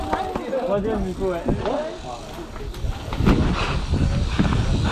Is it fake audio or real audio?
real